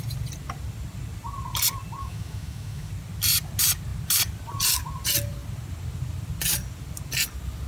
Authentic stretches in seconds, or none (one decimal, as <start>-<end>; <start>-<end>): 0.0-2.0; 2.9-7.7